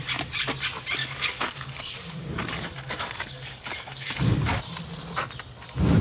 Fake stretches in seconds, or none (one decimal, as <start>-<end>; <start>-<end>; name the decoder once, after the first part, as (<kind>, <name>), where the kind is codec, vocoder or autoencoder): 1.0-4.6 (codec, DAC)